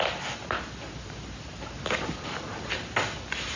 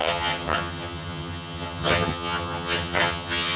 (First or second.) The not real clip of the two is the second